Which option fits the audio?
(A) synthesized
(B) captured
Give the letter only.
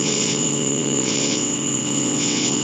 A